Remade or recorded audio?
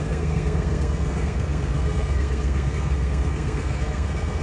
remade